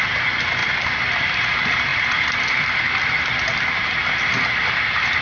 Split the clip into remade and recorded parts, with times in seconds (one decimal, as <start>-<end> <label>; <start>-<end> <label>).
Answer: 0.0-0.6 recorded; 0.6-1.4 remade; 1.4-1.9 recorded; 1.9-5.2 remade